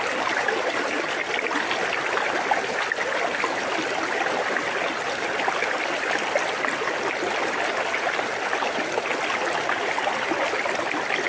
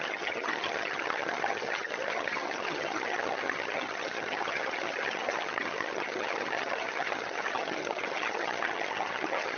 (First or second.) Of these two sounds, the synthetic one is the second